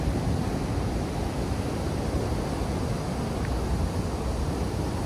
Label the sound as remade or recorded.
recorded